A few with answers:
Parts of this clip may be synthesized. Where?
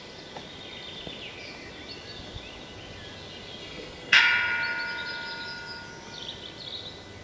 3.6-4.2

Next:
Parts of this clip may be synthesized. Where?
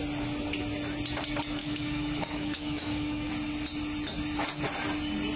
1.6-3.3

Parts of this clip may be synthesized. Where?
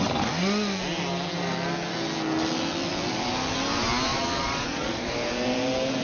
4.1-5.1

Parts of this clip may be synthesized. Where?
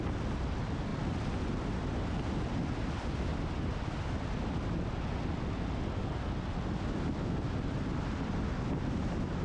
none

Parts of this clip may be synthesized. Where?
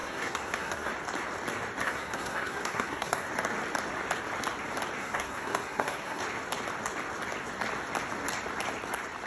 0.0-0.9; 1.8-3.3; 5.0-6.2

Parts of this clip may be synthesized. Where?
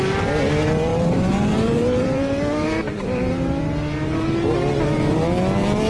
0.9-3.6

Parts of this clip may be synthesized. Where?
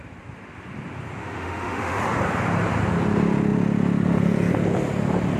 1.2-2.0